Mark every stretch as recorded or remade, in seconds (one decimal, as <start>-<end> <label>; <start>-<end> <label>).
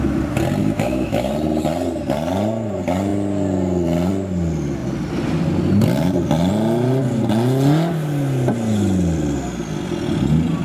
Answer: 0.0-0.6 recorded; 0.6-1.3 remade; 1.3-10.6 recorded